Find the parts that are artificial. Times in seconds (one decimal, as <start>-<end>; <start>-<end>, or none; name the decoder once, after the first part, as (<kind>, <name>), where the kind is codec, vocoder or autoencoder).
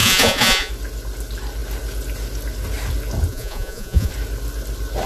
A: 0.0-0.7 (vocoder, Vocos); 3.3-4.1